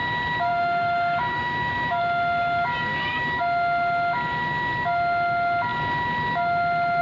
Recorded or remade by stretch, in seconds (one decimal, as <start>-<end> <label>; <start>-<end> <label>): 0.0-0.5 recorded; 0.5-2.0 remade; 2.0-2.9 recorded; 2.9-3.4 remade; 3.4-7.0 recorded